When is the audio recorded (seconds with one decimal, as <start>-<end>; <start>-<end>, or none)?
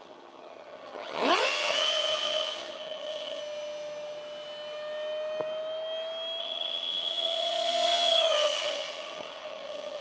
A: 3.4-6.4